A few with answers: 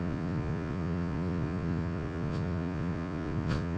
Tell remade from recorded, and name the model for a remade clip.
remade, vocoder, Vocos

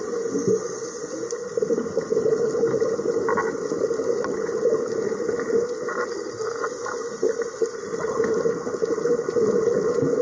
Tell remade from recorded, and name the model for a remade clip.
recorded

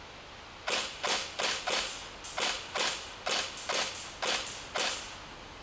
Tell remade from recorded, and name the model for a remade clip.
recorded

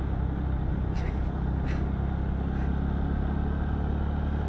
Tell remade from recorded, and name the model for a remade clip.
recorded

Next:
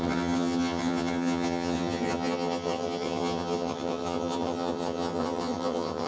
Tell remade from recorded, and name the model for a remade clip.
remade, vocoder, HiFi-GAN